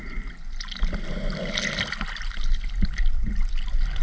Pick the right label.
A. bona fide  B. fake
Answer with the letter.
A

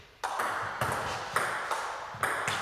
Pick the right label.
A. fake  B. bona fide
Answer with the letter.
B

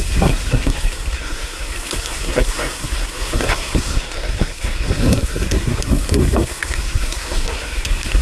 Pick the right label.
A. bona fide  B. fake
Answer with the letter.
B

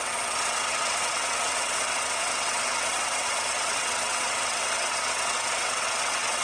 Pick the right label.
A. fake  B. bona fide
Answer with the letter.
A